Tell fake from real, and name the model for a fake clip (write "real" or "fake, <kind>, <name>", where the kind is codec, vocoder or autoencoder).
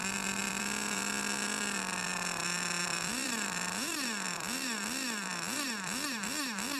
fake, vocoder, BigVGAN v2